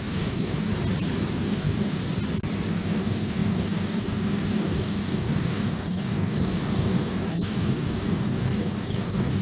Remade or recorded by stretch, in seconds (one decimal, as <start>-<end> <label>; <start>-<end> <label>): 0.0-0.7 remade; 0.7-1.3 recorded; 1.3-2.0 remade; 2.0-2.7 recorded; 2.7-9.4 remade